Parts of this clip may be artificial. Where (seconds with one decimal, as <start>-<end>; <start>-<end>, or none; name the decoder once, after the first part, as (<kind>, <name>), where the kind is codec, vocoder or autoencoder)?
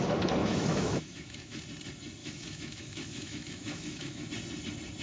0.4-1.6 (autoencoder, DAC-VAE); 2.2-4.3